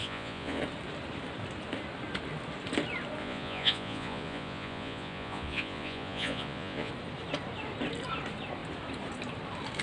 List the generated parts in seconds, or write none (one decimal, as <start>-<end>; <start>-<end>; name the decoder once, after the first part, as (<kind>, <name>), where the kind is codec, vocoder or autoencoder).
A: 0.0-0.6 (vocoder, Vocos); 3.2-6.9